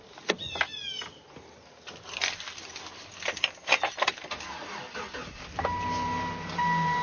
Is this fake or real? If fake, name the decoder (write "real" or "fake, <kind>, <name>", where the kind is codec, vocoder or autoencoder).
real